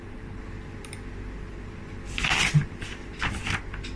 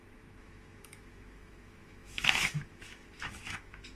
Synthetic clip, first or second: second